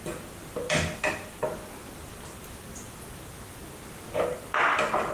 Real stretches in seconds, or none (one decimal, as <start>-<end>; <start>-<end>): 0.0-5.1